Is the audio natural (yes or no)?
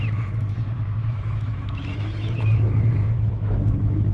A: no